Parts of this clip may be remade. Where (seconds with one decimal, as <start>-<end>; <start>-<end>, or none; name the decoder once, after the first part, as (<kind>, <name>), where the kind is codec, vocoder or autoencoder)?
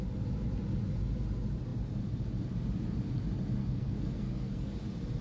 3.6-4.7 (codec, SNAC)